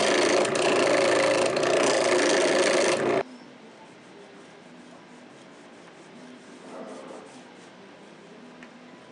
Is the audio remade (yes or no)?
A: no